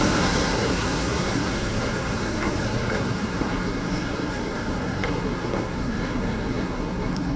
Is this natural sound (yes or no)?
no